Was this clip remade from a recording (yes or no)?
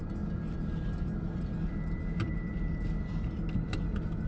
no